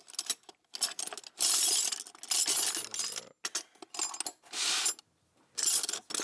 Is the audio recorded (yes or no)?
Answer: yes